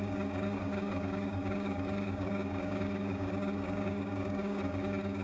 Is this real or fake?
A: fake